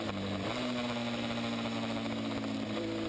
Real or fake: real